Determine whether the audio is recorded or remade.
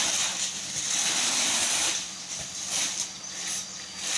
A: remade